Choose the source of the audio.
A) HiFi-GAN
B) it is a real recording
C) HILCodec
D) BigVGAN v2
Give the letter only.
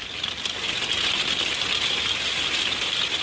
B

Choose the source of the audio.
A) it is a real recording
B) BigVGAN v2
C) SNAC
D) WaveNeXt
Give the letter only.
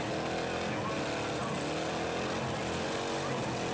A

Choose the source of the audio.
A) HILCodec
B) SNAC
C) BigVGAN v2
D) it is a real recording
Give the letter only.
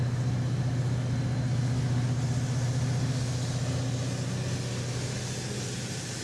D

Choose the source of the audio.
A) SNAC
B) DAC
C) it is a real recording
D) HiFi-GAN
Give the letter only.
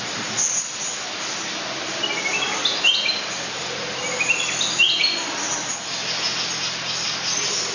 C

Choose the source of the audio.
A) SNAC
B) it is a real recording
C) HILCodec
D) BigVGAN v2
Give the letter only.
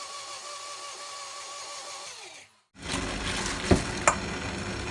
B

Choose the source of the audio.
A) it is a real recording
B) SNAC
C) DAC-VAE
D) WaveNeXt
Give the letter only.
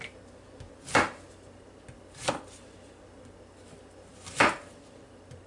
A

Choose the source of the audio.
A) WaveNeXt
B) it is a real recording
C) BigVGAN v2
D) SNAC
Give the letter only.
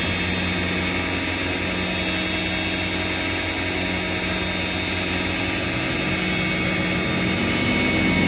B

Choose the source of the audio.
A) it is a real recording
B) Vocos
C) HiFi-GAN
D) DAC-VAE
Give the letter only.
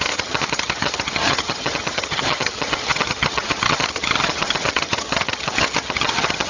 C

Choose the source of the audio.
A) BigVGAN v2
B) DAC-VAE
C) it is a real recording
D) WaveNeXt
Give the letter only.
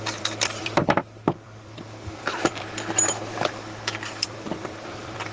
A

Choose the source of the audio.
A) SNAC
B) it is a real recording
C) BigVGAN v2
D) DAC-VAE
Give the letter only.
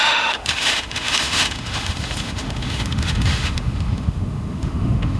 D